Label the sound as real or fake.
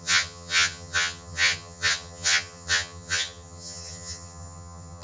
fake